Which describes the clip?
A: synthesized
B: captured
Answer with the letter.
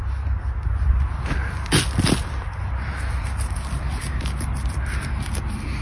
B